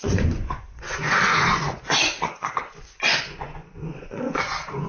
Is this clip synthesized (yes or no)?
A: yes